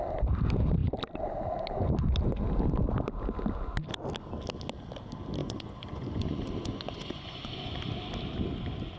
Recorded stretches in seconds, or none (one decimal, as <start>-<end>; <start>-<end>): 0.0-5.4; 7.9-9.0